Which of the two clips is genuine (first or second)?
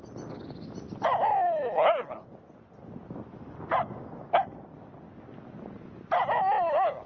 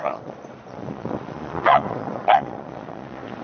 first